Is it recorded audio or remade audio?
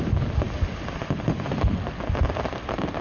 recorded